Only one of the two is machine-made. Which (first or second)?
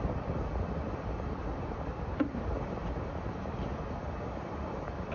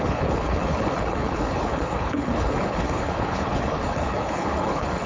second